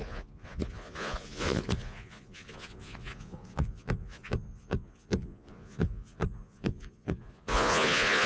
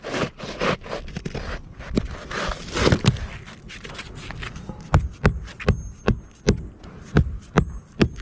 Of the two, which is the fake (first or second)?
first